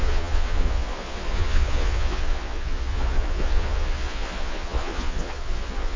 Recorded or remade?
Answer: remade